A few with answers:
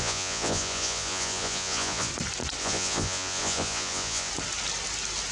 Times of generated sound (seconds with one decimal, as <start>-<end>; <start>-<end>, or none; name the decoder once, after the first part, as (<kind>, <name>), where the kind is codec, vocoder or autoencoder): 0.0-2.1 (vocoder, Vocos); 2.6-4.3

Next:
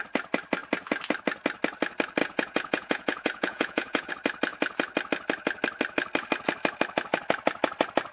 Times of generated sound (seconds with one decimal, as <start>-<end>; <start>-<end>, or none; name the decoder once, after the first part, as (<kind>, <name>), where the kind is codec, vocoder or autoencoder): 2.2-4.1 (vocoder, Vocos)

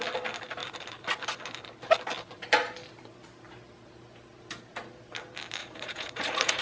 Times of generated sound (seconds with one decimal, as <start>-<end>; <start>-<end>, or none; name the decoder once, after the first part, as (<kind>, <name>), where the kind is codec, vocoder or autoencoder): 5.6-6.6 (vocoder, Vocos)